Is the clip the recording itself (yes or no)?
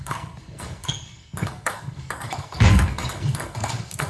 no